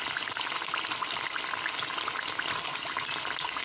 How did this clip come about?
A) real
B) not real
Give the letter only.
A